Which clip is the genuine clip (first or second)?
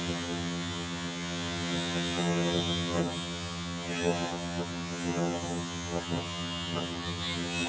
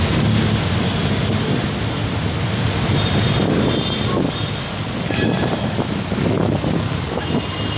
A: second